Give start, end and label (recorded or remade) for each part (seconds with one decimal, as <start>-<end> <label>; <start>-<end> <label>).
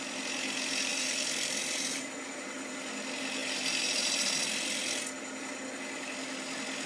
0.0-0.9 recorded; 0.9-2.7 remade; 2.7-3.4 recorded; 3.4-4.4 remade; 4.4-6.9 recorded